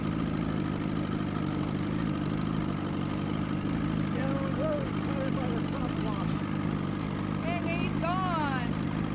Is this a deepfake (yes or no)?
no